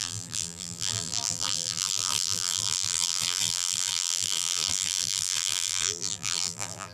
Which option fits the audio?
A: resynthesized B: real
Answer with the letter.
A